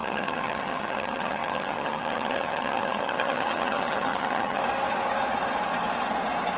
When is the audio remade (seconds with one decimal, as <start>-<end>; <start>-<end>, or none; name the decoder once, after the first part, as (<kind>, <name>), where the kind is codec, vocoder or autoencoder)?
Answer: 0.0-4.6 (vocoder, HiFi-GAN)

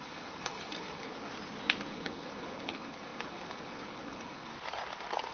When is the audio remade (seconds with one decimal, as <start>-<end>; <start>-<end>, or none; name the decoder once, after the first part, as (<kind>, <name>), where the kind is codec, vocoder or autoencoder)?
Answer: 0.0-1.3 (codec, HILCodec); 1.9-4.5